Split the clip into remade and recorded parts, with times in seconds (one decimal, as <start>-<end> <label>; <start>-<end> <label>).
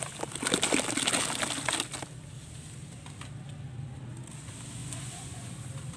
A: 0.0-4.8 recorded; 4.8-5.6 remade; 5.6-6.0 recorded